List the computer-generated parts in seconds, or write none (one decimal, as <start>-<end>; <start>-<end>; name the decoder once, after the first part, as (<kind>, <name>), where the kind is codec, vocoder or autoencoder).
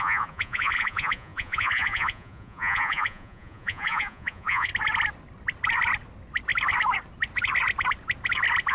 0.0-4.7 (vocoder, Vocos)